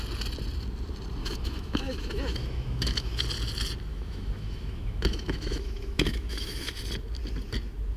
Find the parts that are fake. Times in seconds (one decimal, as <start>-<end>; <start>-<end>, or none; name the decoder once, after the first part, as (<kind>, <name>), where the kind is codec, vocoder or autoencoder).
1.2-3.2 (autoencoder, DAC-VAE); 3.9-6.7